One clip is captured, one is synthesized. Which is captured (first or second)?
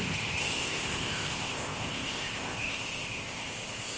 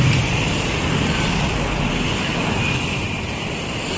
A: second